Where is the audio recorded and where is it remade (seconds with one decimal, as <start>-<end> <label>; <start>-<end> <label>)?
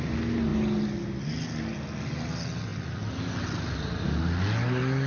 0.0-5.1 recorded